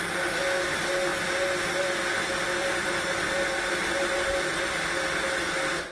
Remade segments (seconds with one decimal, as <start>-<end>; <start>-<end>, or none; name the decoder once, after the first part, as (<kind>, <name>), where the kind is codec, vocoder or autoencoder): none